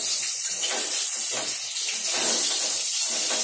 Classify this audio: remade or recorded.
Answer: recorded